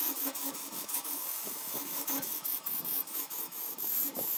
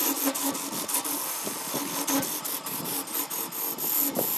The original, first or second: second